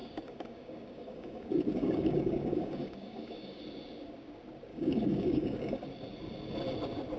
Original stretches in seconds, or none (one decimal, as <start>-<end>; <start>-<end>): 3.6-4.7; 5.8-7.2